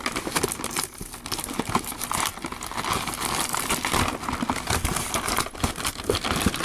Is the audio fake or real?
real